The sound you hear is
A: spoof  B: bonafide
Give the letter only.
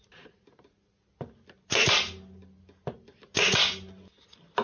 B